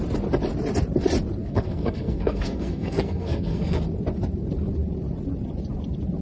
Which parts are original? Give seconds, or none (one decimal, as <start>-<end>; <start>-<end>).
0.0-1.4; 3.8-6.2

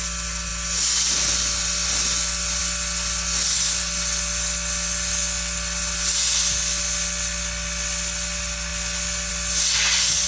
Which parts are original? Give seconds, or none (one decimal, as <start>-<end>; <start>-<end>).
0.0-10.3

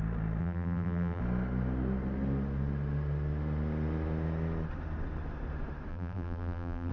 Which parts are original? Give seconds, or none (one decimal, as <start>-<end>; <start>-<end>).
0.0-0.4; 1.2-5.9